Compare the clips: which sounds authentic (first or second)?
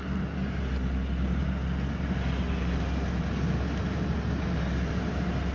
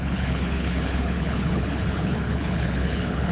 first